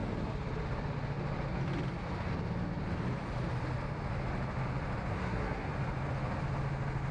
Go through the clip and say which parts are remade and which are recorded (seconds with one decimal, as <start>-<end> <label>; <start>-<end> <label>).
0.0-5.1 recorded; 5.1-5.7 remade; 5.7-7.1 recorded